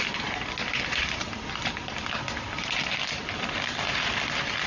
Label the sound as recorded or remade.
recorded